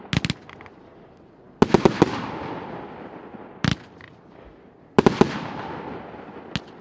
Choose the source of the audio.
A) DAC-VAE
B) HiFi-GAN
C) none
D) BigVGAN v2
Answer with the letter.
C